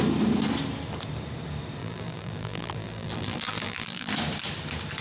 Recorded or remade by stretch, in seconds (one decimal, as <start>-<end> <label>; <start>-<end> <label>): 0.0-1.8 recorded; 1.8-4.1 remade; 4.1-5.0 recorded